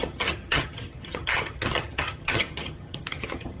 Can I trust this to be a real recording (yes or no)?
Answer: no